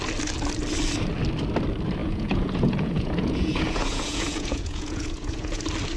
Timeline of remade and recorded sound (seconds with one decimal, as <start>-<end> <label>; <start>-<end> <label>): 0.0-2.0 recorded; 2.0-5.6 remade; 5.6-6.0 recorded